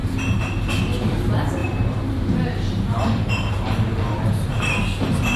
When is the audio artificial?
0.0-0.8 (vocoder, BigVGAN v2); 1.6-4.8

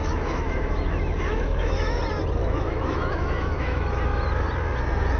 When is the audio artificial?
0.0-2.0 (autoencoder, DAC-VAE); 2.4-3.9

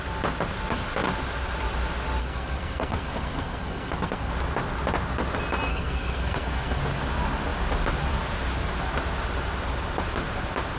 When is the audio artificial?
2.2-4.3 (codec, SNAC); 5.7-6.8

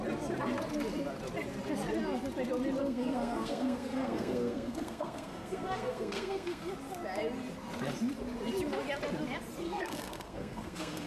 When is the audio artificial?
2.8-6.7 (codec, SNAC); 9.6-11.1

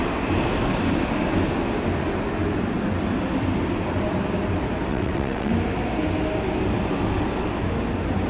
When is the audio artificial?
4.9-5.5 (vocoder, WaveNeXt)